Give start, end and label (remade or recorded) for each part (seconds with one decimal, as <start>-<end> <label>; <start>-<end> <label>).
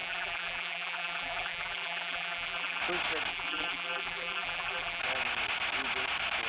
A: 0.0-2.8 remade; 2.8-3.3 recorded; 3.3-5.0 remade; 5.0-6.5 recorded